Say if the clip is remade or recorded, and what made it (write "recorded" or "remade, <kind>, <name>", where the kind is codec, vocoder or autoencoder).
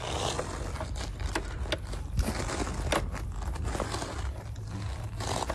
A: recorded